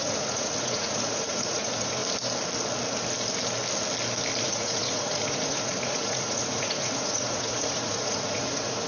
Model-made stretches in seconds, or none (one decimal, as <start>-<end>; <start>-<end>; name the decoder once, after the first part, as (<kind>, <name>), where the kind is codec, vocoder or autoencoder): 0.0-2.0 (vocoder, Vocos); 4.4-8.9